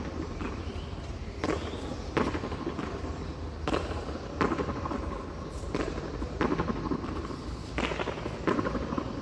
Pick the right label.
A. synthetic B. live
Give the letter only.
B